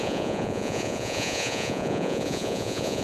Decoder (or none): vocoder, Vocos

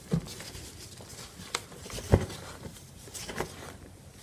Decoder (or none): none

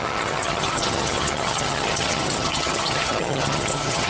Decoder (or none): vocoder, HiFi-GAN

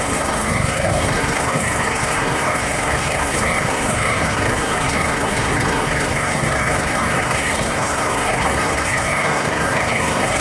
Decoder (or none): codec, SNAC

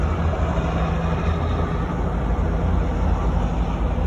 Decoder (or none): none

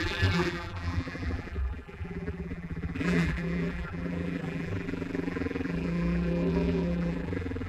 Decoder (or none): vocoder, BigVGAN v2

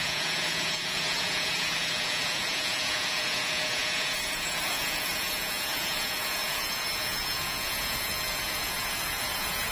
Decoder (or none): vocoder, Vocos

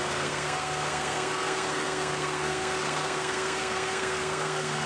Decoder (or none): codec, SNAC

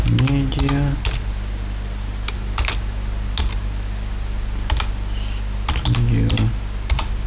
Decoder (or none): none